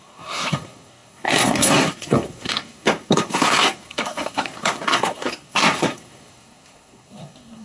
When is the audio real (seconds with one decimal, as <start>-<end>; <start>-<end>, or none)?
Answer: none